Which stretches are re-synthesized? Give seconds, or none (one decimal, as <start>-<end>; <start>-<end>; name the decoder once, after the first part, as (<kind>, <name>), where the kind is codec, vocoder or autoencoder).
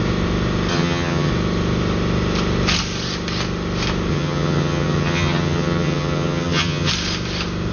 0.7-1.3 (vocoder, HiFi-GAN); 4.1-6.9